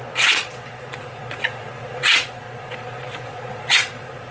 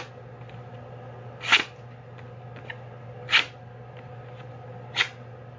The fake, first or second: first